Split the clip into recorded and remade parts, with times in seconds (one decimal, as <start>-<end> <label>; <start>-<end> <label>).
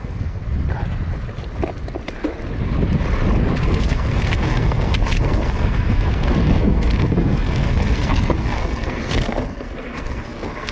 0.0-0.4 remade; 0.4-3.6 recorded; 3.6-10.7 remade